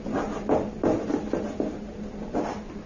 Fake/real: real